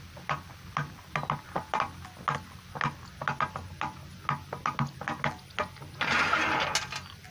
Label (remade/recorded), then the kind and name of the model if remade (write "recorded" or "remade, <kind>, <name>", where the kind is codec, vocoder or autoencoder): recorded